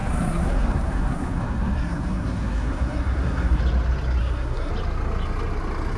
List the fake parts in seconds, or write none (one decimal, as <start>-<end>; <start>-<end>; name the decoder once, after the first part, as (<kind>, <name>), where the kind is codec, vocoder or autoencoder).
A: 0.0-3.6 (codec, SNAC); 4.2-4.7